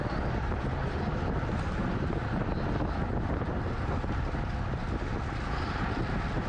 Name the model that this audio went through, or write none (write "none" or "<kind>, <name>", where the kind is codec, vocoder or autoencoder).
none